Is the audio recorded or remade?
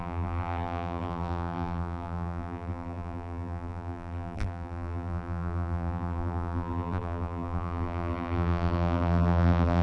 remade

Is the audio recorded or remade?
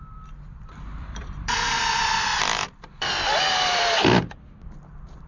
remade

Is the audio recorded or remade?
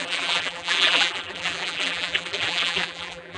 remade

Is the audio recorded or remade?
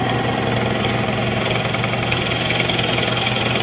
recorded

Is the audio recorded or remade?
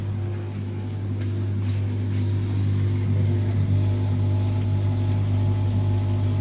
recorded